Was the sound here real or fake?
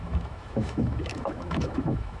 fake